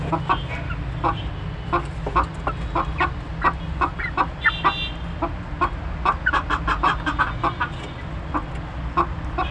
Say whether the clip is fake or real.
real